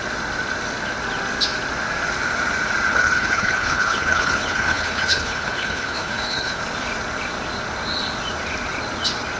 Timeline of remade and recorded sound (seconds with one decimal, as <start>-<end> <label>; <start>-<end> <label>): 0.0-2.9 recorded; 2.9-6.6 remade; 6.6-9.4 recorded

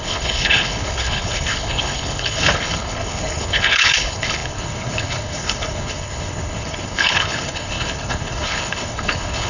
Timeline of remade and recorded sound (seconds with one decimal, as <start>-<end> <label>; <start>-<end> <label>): 0.0-9.5 remade